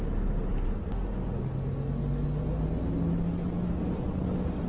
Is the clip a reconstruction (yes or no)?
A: no